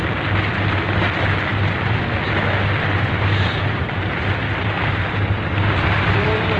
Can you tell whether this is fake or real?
fake